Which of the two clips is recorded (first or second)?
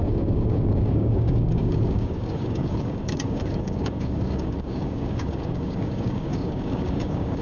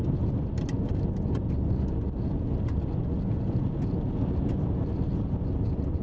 second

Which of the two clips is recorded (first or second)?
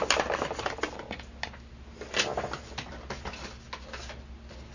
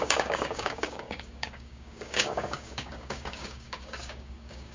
first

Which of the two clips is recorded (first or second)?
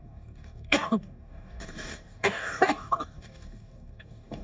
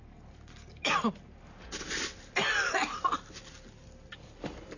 second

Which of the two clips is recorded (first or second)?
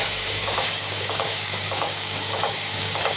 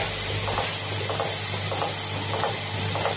second